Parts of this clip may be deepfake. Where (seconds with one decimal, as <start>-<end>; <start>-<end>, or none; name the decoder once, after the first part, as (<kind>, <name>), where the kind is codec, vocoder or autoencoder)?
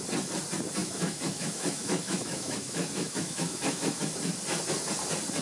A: 0.8-4.0 (autoencoder, DAC-VAE)